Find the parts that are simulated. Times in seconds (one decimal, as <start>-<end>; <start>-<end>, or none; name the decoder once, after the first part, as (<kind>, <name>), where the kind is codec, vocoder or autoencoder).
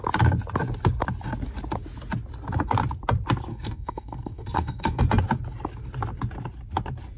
3.5-5.0 (codec, SNAC)